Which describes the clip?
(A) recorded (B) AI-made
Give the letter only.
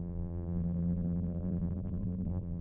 B